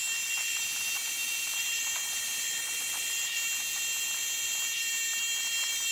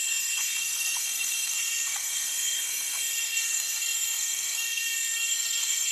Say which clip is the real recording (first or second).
first